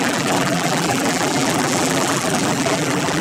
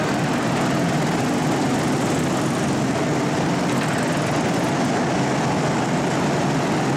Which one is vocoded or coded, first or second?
first